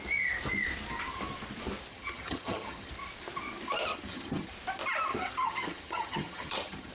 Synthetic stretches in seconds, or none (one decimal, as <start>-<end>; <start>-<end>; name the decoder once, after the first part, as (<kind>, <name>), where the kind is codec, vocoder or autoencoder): 1.9-2.9 (vocoder, HiFi-GAN); 3.9-4.5; 5.1-6.9